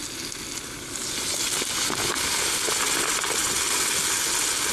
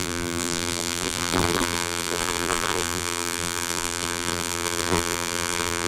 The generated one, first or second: second